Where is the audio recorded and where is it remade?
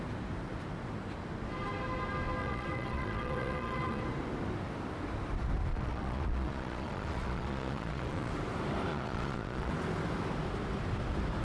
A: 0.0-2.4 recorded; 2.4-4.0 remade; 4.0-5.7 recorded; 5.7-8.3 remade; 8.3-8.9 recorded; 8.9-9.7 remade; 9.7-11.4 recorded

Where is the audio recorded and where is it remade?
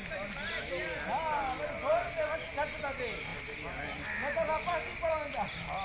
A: 0.0-5.8 recorded